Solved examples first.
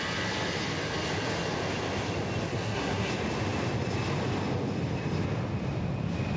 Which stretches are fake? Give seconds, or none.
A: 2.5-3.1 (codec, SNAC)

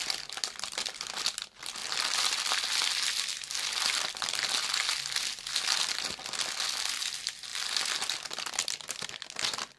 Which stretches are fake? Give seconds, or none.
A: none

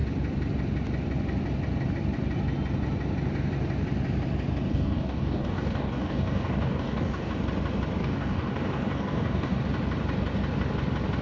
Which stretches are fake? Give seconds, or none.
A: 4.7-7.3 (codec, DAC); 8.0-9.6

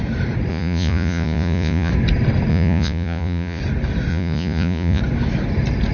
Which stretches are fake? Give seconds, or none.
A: 0.5-1.9 (vocoder, Vocos); 2.5-3.6; 4.1-5.0